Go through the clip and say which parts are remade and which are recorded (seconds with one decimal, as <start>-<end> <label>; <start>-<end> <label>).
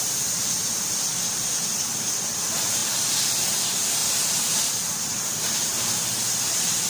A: 0.0-2.8 remade; 2.8-3.3 recorded; 3.3-6.9 remade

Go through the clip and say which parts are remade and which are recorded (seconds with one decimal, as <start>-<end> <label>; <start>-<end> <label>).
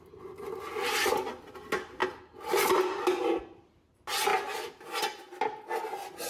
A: 0.0-6.3 recorded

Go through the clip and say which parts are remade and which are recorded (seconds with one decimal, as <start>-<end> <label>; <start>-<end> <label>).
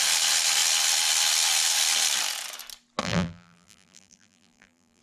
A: 0.0-3.0 recorded; 3.0-5.0 remade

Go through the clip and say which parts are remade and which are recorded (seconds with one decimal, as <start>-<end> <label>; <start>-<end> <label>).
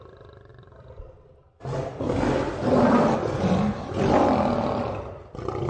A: 0.0-5.7 recorded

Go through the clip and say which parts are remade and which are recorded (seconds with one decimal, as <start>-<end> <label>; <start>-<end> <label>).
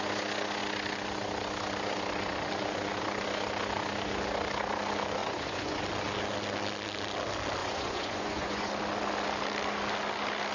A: 0.0-5.2 recorded; 5.2-5.8 remade; 5.8-7.6 recorded; 7.6-8.7 remade; 8.7-10.5 recorded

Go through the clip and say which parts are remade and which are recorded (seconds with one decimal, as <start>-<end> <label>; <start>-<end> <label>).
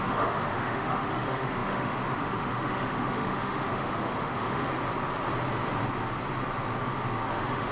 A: 0.0-4.7 remade; 4.7-7.3 recorded; 7.3-7.7 remade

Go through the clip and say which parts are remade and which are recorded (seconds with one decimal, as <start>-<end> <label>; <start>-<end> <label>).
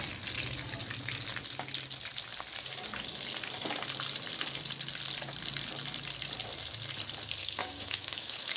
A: 0.0-7.4 recorded; 7.4-8.6 remade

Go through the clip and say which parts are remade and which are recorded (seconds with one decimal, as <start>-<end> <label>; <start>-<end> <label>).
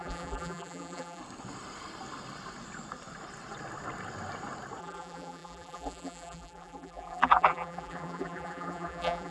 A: 0.0-1.2 remade; 1.2-4.8 recorded; 4.8-9.3 remade